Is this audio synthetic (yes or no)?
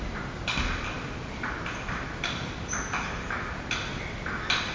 no